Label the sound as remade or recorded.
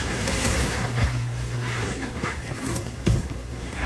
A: remade